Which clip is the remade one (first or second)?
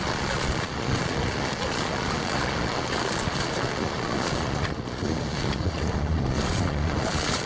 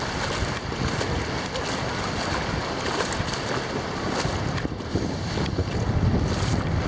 first